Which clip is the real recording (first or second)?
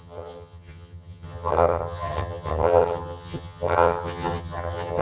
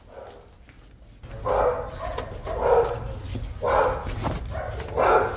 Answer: second